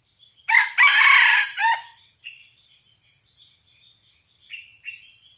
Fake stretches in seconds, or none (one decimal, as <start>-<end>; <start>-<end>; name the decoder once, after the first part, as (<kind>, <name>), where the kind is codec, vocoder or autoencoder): 1.3-2.4 (vocoder, BigVGAN v2)